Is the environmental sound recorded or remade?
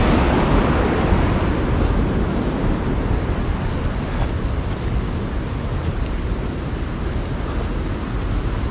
recorded